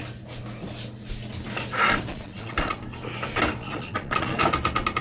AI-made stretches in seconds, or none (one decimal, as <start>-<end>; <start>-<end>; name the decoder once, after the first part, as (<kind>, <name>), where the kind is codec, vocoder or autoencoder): 2.1-2.8 (vocoder, Vocos); 3.6-4.4